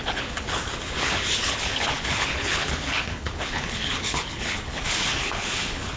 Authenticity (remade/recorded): remade